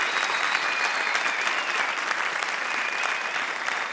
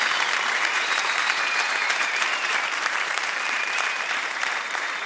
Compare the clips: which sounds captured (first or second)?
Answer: first